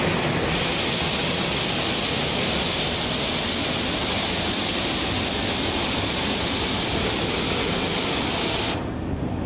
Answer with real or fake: real